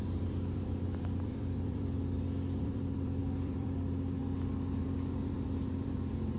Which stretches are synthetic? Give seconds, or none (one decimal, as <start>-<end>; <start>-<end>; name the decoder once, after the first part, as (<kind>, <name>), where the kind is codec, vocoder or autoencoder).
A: 0.0-2.0 (vocoder, BigVGAN v2); 2.6-4.2; 4.8-6.4